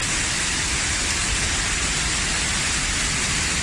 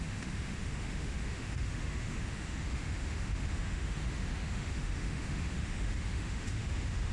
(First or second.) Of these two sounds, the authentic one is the first